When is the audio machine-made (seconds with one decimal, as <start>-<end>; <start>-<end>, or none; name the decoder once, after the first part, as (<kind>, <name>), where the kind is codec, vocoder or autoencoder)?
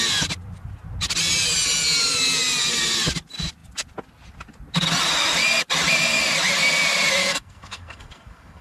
7.2-8.6 (codec, SNAC)